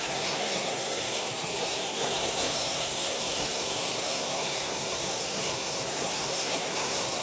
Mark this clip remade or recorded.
remade